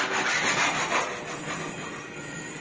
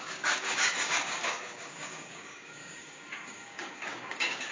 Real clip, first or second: first